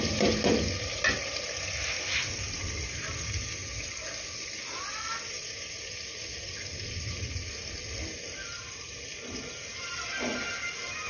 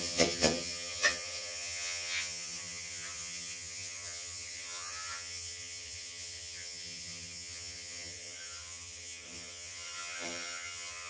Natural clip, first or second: first